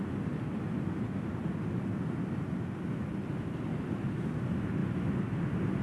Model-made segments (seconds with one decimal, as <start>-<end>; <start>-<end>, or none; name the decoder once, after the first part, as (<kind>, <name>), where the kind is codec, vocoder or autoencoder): none